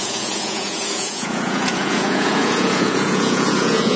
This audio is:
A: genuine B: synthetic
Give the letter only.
B